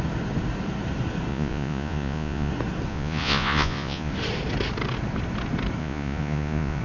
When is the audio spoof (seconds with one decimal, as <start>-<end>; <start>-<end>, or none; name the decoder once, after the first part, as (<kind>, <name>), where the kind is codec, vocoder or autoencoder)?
1.3-2.5 (vocoder, Vocos); 2.9-4.1; 5.8-6.8